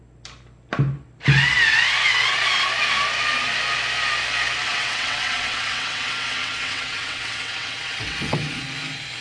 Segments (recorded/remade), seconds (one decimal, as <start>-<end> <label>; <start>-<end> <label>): 0.0-4.7 recorded; 4.7-8.6 remade; 8.6-9.2 recorded